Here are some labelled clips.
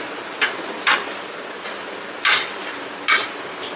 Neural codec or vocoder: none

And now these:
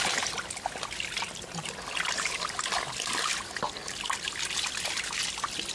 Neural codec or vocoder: none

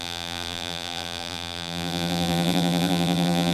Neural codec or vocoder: vocoder, BigVGAN v2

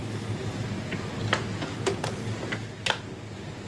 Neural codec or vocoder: none